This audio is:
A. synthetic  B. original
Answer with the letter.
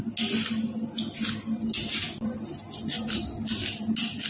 B